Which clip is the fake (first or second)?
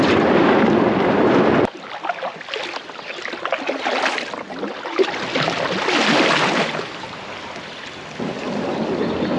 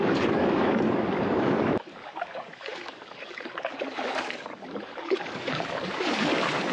second